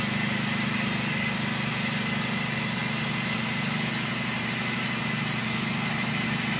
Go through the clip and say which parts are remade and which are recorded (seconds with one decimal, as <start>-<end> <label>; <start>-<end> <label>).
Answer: 0.0-6.6 recorded